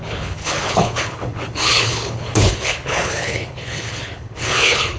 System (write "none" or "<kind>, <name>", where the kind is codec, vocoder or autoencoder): codec, HILCodec